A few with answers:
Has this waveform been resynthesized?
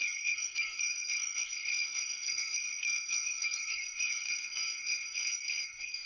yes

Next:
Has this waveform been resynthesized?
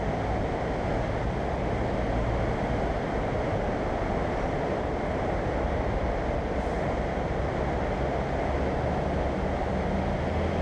no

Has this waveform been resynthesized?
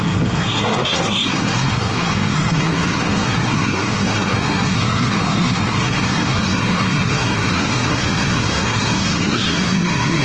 yes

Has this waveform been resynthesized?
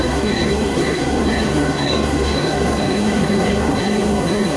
yes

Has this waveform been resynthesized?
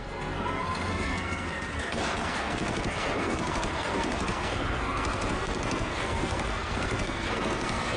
yes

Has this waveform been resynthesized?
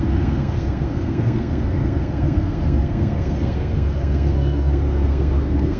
yes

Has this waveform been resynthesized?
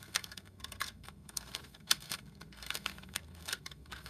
yes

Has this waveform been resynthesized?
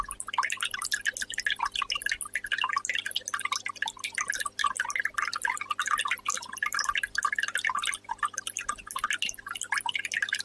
no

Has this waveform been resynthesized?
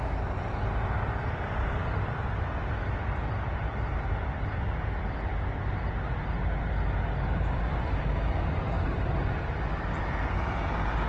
no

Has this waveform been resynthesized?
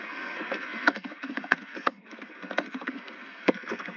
yes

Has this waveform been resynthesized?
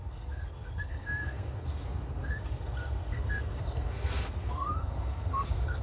yes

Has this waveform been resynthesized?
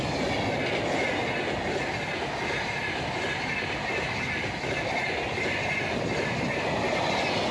no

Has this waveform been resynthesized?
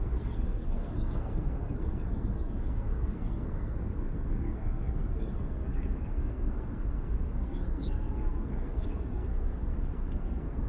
yes